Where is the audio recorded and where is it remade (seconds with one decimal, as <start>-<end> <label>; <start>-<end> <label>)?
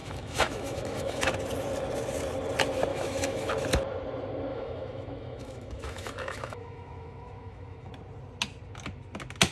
0.0-1.3 remade; 1.3-2.9 recorded; 2.9-3.5 remade; 3.5-4.5 recorded; 4.5-7.9 remade; 7.9-9.5 recorded